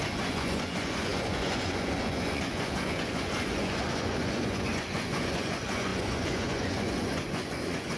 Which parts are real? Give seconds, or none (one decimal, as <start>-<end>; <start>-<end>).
none